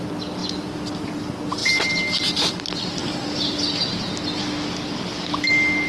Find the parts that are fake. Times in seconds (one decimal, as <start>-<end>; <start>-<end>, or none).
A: 1.6-2.5; 3.0-4.1